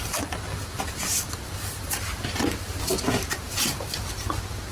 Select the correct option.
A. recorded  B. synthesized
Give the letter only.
B